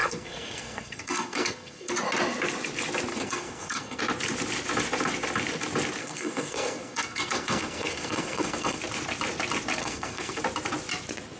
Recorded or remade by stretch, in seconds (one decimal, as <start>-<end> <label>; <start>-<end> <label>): 0.0-1.9 remade; 1.9-3.1 recorded; 3.1-4.0 remade; 4.0-6.0 recorded; 6.0-8.8 remade; 8.8-9.8 recorded; 9.8-10.4 remade; 10.4-11.4 recorded